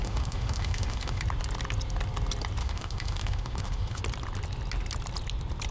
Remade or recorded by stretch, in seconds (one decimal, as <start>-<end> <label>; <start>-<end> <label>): 0.0-1.2 remade; 1.2-2.6 recorded; 2.6-4.0 remade; 4.0-5.7 recorded